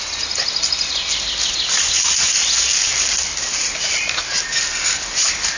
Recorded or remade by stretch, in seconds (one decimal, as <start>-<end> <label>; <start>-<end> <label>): 0.0-5.6 recorded